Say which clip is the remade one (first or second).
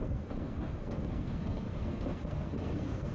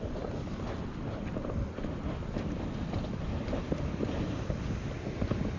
first